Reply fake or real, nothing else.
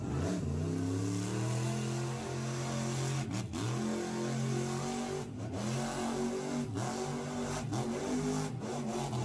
real